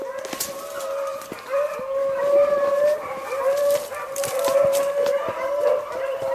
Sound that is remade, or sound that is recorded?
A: recorded